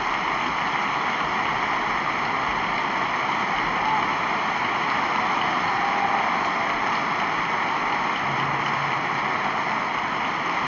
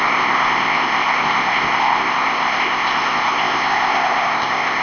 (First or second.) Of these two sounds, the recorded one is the first